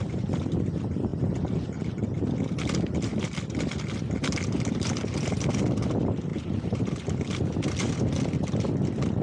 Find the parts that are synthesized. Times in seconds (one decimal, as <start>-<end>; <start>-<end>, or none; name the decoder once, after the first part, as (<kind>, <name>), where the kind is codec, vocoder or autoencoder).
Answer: 6.3-7.9 (vocoder, BigVGAN v2)